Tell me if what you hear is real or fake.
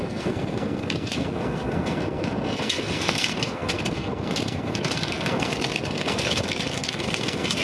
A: fake